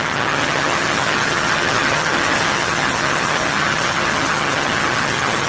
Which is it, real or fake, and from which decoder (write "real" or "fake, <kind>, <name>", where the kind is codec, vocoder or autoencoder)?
fake, vocoder, HiFi-GAN